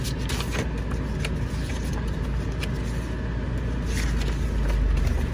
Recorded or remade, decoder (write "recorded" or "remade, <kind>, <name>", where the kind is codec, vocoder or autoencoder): recorded